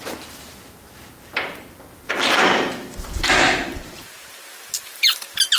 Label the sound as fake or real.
fake